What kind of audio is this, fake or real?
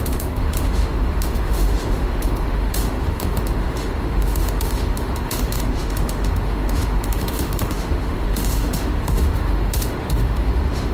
fake